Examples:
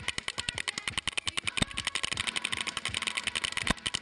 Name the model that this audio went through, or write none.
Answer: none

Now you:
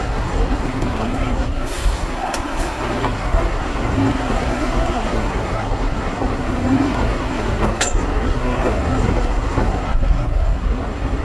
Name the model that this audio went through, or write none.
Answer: codec, SNAC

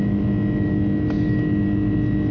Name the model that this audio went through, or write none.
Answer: none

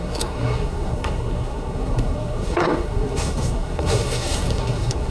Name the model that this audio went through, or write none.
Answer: codec, SNAC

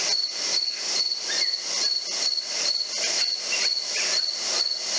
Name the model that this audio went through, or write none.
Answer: none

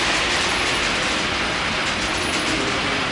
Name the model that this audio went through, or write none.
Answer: none